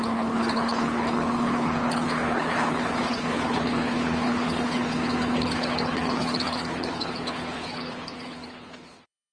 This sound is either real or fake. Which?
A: fake